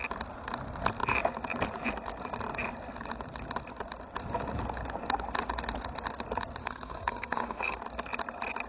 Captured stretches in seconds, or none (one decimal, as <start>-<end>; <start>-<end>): 0.0-6.6; 7.8-8.7